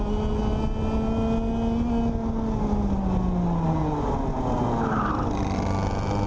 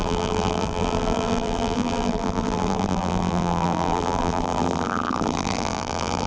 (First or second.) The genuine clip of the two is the first